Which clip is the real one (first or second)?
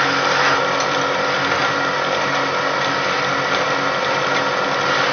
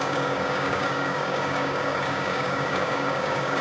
first